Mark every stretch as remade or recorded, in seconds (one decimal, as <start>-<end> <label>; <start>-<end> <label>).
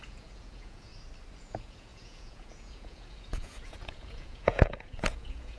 0.0-0.9 remade; 0.9-1.4 recorded; 1.4-5.6 remade